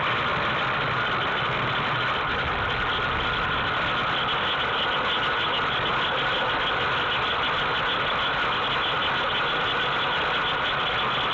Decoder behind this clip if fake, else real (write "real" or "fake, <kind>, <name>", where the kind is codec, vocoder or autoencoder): real